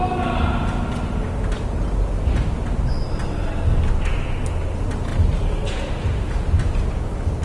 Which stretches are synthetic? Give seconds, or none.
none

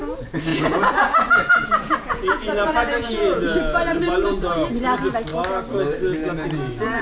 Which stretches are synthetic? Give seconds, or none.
0.5-4.7 (vocoder, Vocos)

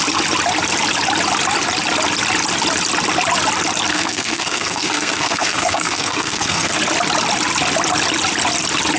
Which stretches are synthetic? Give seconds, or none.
3.9-6.8 (codec, SNAC)